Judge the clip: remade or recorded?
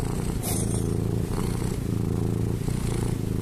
recorded